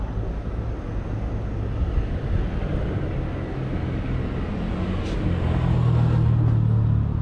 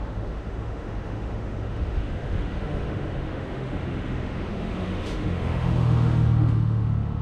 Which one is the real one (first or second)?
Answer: first